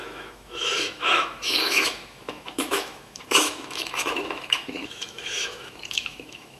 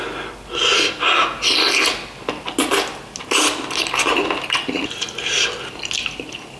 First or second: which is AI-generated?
first